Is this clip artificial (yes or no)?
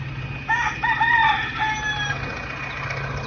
no